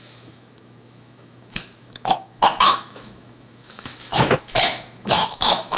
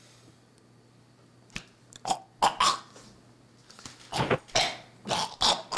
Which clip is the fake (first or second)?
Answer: first